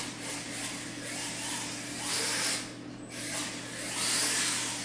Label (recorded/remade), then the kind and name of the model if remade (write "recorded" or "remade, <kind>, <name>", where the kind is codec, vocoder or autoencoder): recorded